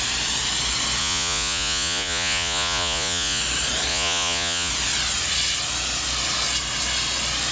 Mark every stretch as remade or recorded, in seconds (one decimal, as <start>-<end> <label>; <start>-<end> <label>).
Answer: 0.0-1.0 recorded; 1.0-3.4 remade; 3.4-3.9 recorded; 3.9-4.7 remade; 4.7-7.5 recorded